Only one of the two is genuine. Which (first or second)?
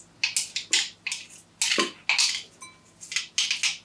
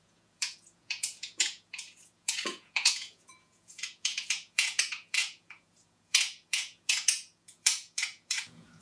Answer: first